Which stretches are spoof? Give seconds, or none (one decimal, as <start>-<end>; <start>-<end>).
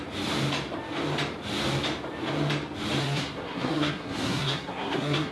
3.0-5.3